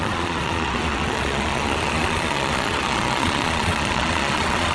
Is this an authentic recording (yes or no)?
no